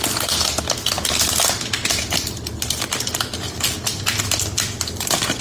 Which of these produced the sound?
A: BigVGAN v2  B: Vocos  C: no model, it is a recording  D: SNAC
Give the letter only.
C